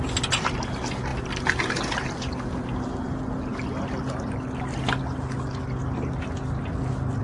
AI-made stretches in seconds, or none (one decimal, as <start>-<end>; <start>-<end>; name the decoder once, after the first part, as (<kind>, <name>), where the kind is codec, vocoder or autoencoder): none